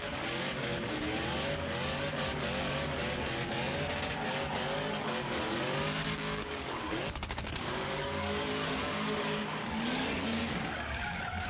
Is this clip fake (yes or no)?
yes